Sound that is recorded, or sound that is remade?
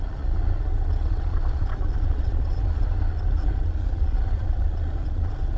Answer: remade